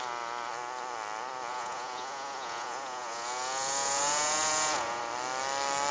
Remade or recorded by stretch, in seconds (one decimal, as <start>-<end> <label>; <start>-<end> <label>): 0.0-1.5 recorded; 1.5-5.0 remade; 5.0-5.9 recorded